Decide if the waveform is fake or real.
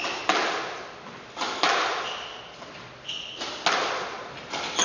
real